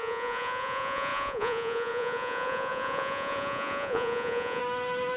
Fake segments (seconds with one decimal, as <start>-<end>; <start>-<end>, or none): 0.0-4.6